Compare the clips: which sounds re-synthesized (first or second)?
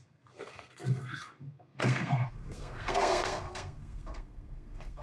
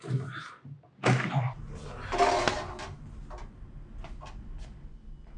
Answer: first